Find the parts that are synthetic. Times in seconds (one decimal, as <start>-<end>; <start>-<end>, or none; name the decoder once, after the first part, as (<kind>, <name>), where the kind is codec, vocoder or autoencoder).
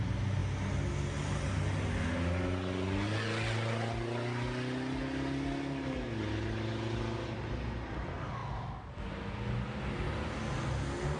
none